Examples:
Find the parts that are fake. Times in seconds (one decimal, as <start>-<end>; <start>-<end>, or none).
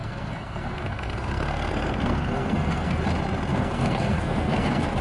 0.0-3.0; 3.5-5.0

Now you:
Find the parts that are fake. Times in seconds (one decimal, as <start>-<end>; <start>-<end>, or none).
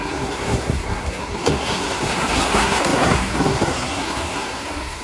0.0-5.0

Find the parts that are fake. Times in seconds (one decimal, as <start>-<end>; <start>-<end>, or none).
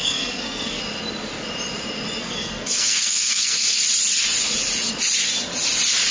0.0-0.8; 2.2-3.8